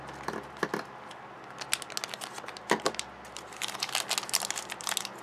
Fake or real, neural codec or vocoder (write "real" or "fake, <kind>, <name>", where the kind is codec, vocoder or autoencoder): real